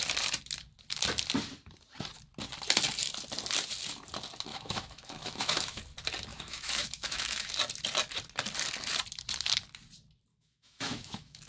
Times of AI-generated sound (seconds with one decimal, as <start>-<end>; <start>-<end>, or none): 4.5-5.8; 6.3-7.5; 10.3-11.5